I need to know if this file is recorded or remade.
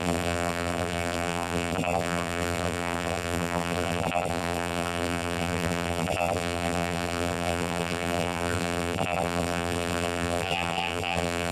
remade